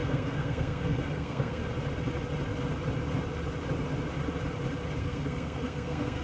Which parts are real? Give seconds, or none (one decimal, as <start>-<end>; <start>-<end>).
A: 1.6-5.0